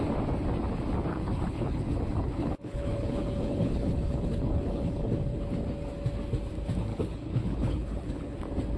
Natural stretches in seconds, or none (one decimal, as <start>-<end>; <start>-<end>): 0.0-1.1; 5.4-6.9; 8.4-8.8